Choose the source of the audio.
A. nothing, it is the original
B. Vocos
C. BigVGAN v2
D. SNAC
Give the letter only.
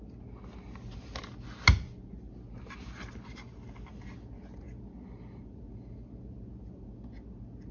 A